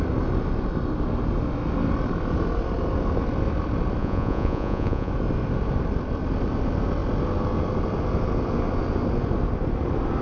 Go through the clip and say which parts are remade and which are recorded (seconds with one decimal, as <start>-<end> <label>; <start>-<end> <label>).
0.0-4.0 recorded; 4.0-5.1 remade; 5.1-10.2 recorded